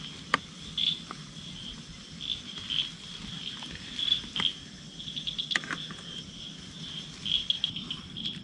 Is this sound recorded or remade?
recorded